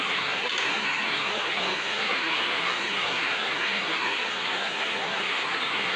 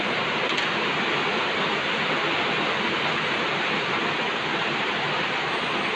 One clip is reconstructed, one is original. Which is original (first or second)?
second